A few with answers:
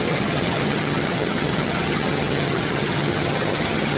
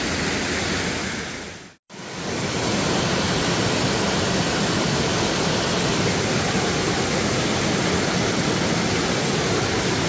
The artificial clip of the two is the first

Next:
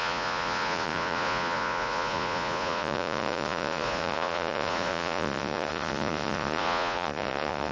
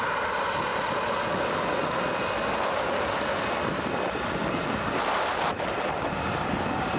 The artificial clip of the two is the first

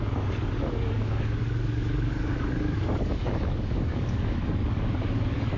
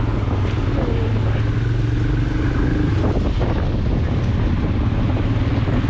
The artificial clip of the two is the first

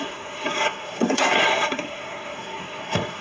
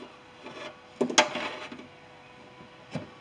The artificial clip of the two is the first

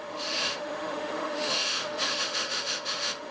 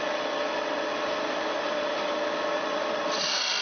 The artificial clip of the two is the first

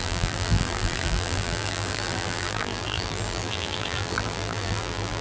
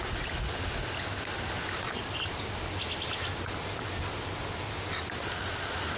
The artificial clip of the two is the first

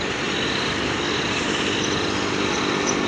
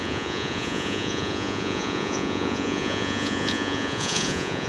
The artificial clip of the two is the second